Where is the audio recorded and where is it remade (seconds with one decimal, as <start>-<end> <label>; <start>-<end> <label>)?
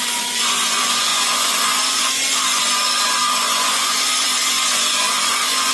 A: 0.0-5.7 remade